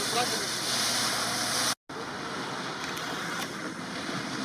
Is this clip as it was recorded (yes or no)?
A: yes